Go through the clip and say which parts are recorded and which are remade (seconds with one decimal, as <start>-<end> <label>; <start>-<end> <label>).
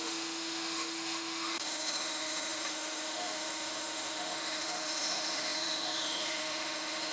0.0-7.1 remade